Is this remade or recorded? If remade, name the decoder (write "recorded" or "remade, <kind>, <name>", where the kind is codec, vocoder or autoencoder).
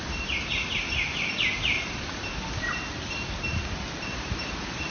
recorded